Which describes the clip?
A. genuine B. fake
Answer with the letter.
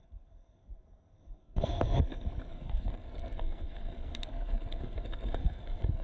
B